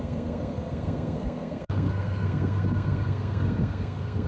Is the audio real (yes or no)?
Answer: no